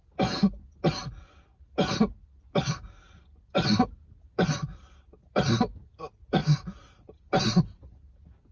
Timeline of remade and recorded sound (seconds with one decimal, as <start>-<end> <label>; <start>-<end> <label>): 0.0-8.5 recorded